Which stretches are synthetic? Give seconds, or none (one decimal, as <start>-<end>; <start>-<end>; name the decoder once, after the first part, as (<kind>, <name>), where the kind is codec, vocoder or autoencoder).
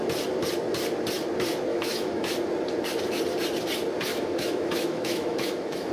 1.7-2.3 (autoencoder, DAC-VAE); 4.1-5.9